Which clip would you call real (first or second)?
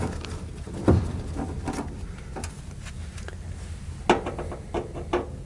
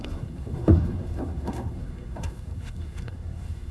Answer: first